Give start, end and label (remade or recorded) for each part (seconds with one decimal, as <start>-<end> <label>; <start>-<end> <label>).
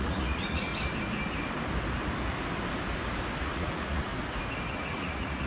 0.0-0.7 remade; 0.7-3.4 recorded; 3.4-4.1 remade; 4.1-4.7 recorded; 4.7-5.5 remade